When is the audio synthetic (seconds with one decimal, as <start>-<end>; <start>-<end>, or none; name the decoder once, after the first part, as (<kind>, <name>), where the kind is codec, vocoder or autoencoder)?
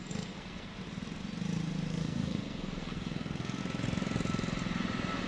0.0-0.7 (codec, SNAC); 1.9-3.6